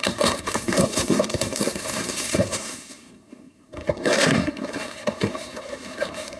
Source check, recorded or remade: remade